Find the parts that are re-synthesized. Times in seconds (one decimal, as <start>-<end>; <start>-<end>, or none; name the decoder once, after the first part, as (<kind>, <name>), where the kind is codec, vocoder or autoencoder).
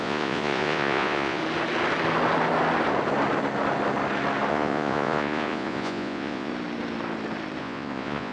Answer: 0.0-1.4 (vocoder, Vocos); 4.5-6.5; 7.6-8.3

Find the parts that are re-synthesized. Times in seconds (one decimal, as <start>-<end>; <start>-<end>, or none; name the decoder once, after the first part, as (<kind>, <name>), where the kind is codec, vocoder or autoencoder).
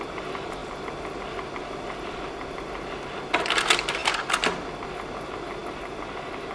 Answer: none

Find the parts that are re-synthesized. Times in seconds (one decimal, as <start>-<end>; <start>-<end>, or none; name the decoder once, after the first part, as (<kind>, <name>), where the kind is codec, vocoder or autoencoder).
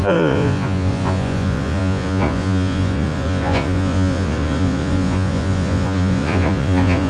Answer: 0.0-7.1 (vocoder, Vocos)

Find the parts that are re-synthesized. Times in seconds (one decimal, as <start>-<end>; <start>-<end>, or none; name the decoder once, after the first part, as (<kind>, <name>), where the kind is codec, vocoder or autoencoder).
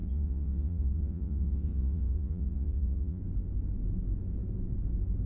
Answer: 0.0-3.2 (vocoder, Vocos)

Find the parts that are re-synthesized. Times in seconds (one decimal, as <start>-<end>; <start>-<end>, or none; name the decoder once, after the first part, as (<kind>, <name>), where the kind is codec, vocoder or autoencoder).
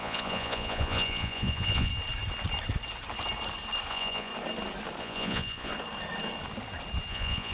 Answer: 0.0-1.9 (vocoder, Vocos); 3.9-4.3; 5.0-5.7; 7.1-7.5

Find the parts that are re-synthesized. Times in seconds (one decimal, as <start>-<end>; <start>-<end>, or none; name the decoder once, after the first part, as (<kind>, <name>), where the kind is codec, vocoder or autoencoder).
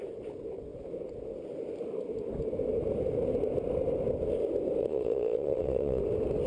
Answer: 4.8-6.0 (vocoder, Vocos)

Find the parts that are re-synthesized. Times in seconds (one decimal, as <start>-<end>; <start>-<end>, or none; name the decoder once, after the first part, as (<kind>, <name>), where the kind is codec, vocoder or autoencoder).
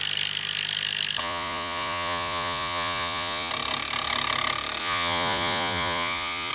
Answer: 1.2-3.5 (vocoder, Vocos); 4.8-6.5